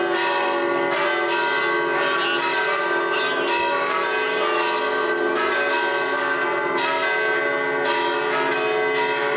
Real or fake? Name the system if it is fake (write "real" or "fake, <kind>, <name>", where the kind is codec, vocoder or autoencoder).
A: real